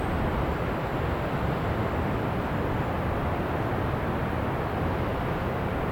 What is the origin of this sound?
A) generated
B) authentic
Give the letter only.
B